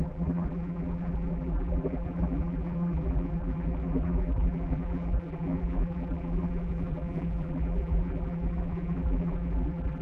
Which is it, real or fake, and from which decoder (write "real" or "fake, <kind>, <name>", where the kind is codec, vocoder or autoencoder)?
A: fake, vocoder, BigVGAN v2